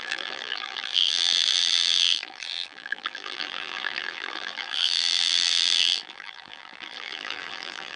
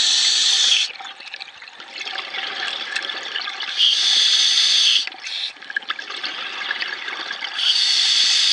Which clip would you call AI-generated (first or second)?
first